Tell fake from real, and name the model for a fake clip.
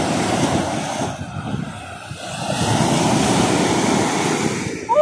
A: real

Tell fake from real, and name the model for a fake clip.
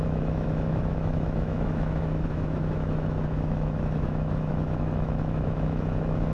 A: fake, autoencoder, DAC-VAE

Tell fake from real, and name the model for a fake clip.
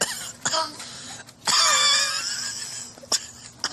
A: real